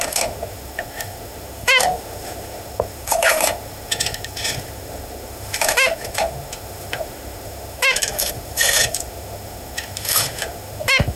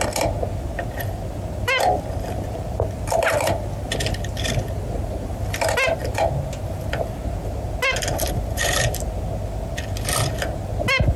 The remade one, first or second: first